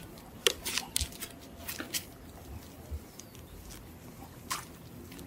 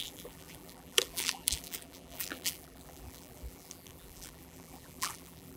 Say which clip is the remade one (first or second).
second